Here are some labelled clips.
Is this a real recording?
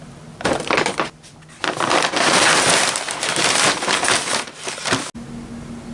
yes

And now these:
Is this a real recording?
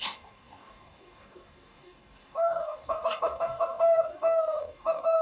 no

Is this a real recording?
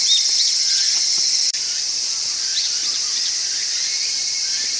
no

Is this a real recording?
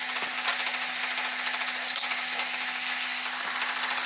yes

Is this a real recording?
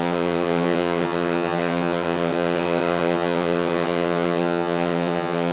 no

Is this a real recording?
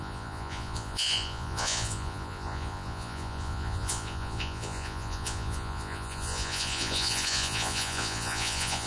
no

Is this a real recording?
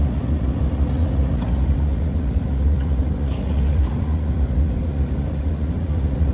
no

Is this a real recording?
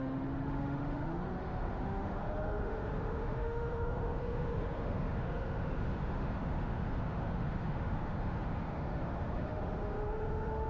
no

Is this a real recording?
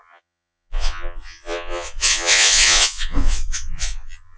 no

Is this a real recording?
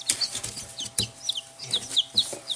yes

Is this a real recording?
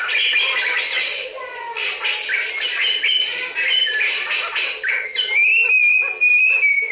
yes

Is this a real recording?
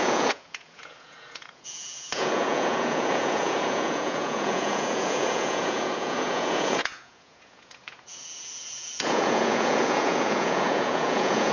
no